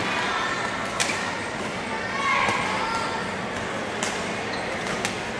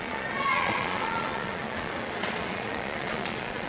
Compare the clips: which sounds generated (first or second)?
second